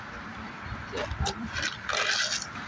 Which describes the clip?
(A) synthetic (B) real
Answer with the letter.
B